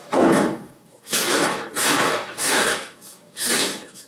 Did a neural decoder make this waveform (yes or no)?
yes